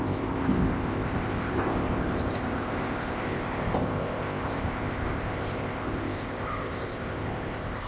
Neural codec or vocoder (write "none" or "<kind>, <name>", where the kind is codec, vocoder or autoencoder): codec, ZipCodec